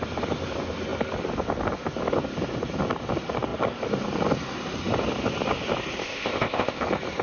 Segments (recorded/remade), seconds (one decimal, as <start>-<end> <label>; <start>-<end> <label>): 0.0-6.0 recorded; 6.0-6.8 remade; 6.8-7.2 recorded